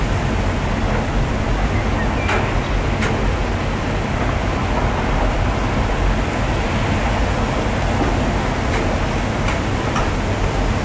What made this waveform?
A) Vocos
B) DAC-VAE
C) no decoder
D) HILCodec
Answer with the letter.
C